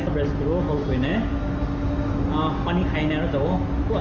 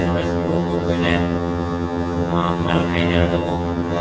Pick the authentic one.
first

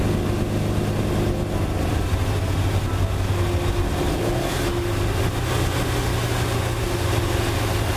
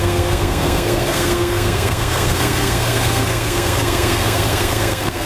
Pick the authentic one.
first